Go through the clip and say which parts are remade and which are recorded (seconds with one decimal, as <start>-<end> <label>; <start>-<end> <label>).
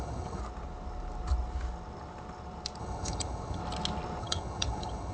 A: 0.0-0.4 remade; 0.4-2.8 recorded; 2.8-3.6 remade; 3.6-4.2 recorded; 4.2-5.1 remade